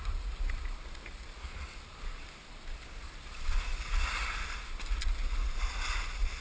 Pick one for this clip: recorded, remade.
recorded